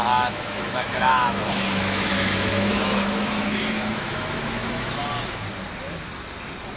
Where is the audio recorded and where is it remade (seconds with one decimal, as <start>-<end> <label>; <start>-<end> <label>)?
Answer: 0.0-5.0 remade; 5.0-6.8 recorded